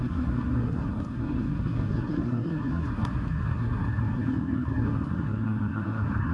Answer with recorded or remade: remade